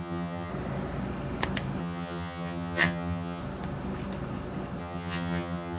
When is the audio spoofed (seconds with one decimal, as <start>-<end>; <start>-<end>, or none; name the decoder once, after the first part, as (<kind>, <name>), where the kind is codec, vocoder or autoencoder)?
0.0-0.5 (vocoder, HiFi-GAN); 1.8-3.4; 4.8-5.8